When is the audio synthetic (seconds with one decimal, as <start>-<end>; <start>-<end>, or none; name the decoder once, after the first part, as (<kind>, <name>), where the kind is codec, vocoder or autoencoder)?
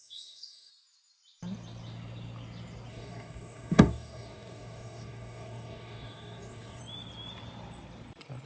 0.0-0.7 (codec, DAC); 2.9-6.8